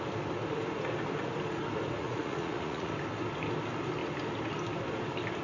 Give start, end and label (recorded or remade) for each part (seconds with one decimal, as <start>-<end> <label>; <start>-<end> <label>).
0.0-2.0 recorded; 2.0-2.9 remade; 2.9-5.4 recorded